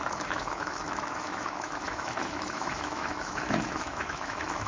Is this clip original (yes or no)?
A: no